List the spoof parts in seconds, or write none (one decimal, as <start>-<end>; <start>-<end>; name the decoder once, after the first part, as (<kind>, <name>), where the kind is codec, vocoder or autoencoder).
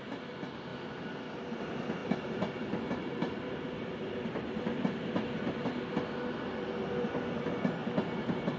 none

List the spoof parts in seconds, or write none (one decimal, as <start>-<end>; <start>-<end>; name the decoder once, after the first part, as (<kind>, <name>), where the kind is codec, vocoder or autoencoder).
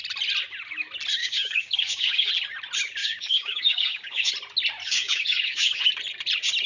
1.2-2.3 (codec, DAC); 3.0-4.3; 4.8-5.9